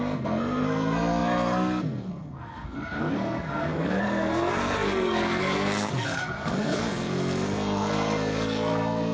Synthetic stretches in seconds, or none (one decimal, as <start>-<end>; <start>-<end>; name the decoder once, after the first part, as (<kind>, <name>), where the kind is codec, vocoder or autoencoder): 0.0-9.1 (codec, SNAC)